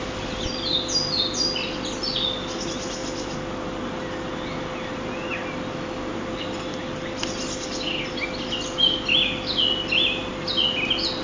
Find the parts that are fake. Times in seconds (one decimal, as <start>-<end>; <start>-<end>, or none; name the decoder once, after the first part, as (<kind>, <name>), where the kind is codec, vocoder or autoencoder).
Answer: none